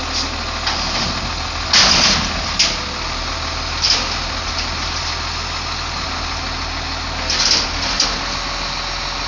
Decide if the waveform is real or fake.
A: real